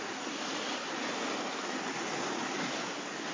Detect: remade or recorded recorded